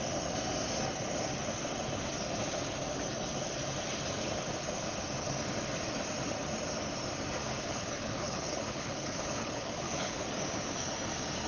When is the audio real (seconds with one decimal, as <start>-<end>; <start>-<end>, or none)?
0.0-7.4; 10.3-11.5